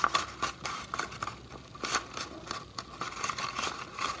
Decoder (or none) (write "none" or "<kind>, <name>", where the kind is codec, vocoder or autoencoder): none